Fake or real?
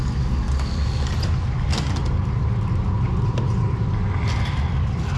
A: real